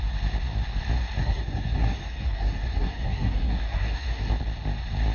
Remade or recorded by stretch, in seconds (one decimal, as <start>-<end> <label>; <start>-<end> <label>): 0.0-1.2 recorded; 1.2-4.3 remade; 4.3-5.1 recorded